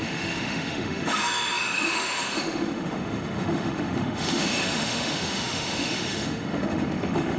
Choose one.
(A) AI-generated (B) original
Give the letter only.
A